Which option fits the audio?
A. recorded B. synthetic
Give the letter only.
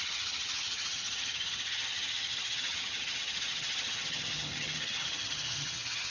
B